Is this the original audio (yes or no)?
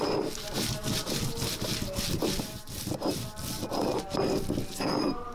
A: yes